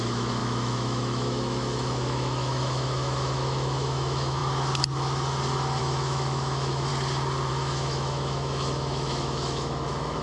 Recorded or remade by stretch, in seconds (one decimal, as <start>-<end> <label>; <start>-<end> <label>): 0.0-4.4 remade; 4.4-5.8 recorded; 5.8-6.9 remade; 6.9-7.5 recorded; 7.5-10.2 remade

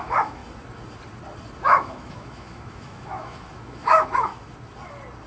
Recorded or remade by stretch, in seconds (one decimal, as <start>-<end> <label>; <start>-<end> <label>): 0.0-0.4 remade; 0.4-1.6 recorded; 1.6-4.3 remade; 4.3-5.3 recorded

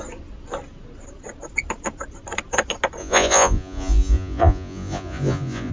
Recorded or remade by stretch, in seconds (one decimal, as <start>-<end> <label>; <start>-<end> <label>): 0.0-3.0 recorded; 3.0-5.7 remade

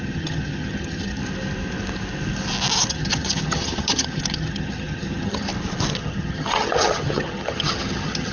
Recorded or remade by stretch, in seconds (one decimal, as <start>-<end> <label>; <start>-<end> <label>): 0.0-1.2 remade; 1.2-2.9 recorded; 2.9-5.5 remade; 5.5-6.0 recorded; 6.0-8.3 remade

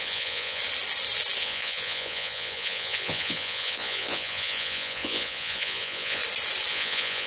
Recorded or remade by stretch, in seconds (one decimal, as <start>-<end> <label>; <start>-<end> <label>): 0.0-0.6 remade; 0.6-1.4 recorded; 1.4-6.2 remade; 6.2-6.7 recorded; 6.7-7.3 remade

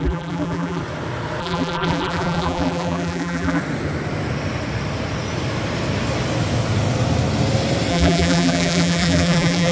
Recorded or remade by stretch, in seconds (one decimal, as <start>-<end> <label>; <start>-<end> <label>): 0.0-0.8 remade; 0.8-1.4 recorded; 1.4-3.6 remade; 3.6-7.9 recorded; 7.9-9.7 remade

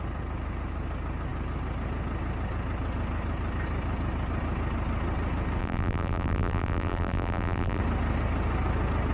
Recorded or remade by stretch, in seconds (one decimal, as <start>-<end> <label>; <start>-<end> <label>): 0.0-5.6 recorded; 5.6-7.8 remade; 7.8-9.1 recorded

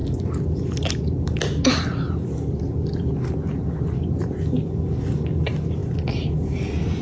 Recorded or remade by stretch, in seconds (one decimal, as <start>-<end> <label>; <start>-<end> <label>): 0.0-7.0 recorded